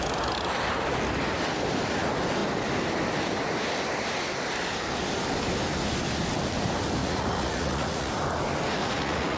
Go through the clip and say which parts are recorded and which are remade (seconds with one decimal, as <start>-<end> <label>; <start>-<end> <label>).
0.0-7.0 recorded; 7.0-8.1 remade; 8.1-8.8 recorded; 8.8-9.4 remade